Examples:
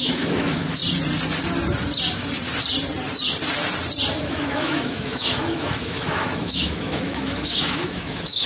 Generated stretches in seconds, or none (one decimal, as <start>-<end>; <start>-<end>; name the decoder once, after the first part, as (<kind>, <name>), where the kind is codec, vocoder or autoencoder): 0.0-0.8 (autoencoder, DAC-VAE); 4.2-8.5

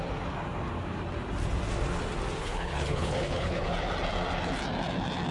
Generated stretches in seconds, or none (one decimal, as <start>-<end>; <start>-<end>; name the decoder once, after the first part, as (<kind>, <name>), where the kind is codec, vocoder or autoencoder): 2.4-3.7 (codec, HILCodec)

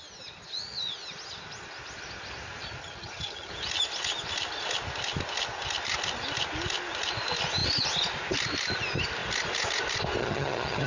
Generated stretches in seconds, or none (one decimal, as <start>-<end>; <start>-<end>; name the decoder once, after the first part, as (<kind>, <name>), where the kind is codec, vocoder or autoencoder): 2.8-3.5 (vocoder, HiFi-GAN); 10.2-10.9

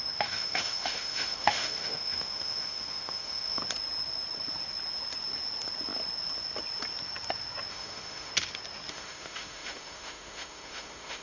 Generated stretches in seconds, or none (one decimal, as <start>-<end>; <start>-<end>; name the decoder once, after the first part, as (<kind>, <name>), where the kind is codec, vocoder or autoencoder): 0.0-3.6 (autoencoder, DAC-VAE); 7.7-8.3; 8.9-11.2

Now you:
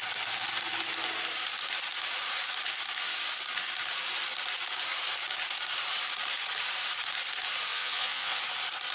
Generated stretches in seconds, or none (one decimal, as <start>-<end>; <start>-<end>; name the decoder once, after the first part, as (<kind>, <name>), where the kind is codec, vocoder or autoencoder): 7.7-8.4 (vocoder, Vocos)